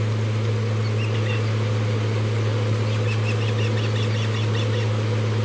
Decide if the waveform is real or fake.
real